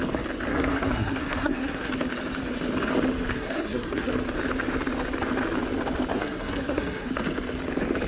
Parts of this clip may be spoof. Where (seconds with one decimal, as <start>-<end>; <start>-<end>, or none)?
0.5-1.9; 3.3-4.1; 6.1-7.1